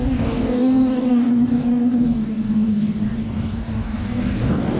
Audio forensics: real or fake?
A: fake